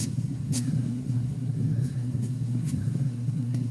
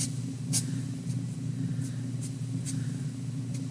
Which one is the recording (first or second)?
second